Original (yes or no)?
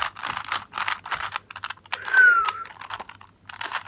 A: yes